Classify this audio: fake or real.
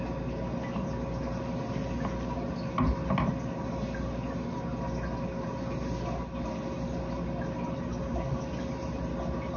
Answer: real